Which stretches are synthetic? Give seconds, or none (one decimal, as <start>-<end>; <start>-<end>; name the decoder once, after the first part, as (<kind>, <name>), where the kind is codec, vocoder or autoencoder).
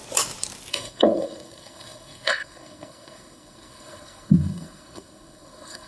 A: 0.7-5.9 (codec, SNAC)